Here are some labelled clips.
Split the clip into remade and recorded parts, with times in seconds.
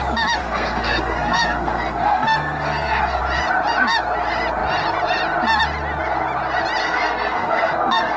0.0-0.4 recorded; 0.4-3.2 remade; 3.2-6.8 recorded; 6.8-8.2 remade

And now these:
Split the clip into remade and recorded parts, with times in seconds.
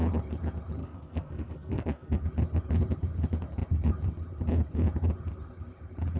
0.0-0.8 recorded; 0.8-2.2 remade; 2.2-6.2 recorded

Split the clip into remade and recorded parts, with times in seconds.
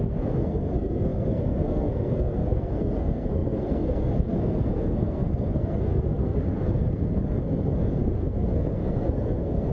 0.0-9.7 remade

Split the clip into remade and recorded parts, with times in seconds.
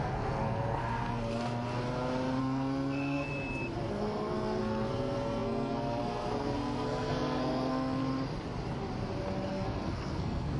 0.0-0.8 remade; 0.8-2.4 recorded; 2.4-3.3 remade; 3.3-3.9 recorded; 3.9-8.0 remade; 8.0-9.5 recorded; 9.5-10.6 remade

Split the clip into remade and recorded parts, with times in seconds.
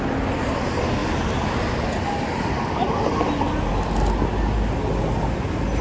0.0-5.8 recorded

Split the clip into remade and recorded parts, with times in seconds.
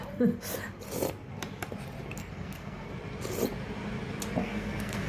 0.0-2.2 recorded; 2.2-2.9 remade; 2.9-4.4 recorded; 4.4-5.1 remade